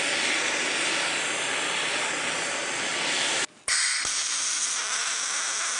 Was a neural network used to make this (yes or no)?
no